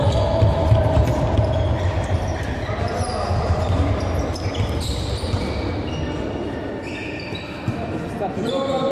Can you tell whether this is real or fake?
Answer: real